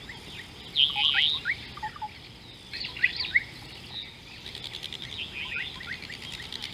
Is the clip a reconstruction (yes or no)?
no